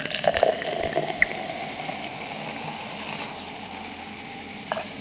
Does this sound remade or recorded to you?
recorded